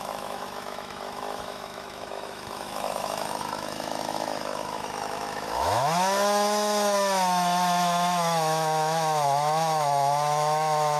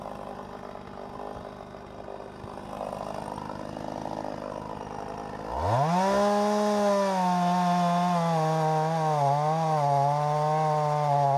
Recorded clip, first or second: second